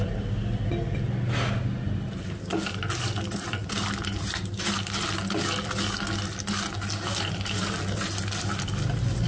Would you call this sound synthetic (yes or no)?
no